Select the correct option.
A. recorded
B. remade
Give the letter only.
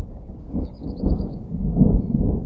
B